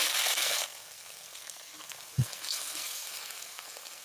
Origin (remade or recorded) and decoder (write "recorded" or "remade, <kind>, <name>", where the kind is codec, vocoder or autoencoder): remade, codec, SNAC